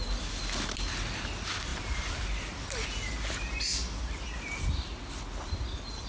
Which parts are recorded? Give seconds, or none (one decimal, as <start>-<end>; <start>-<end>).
0.0-6.1